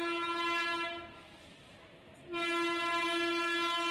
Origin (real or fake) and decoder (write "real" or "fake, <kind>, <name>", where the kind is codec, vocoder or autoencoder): real